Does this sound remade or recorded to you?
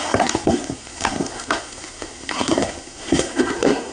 remade